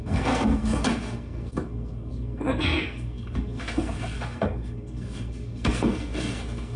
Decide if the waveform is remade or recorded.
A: remade